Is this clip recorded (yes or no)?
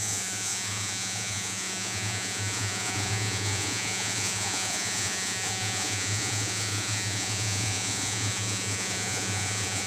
no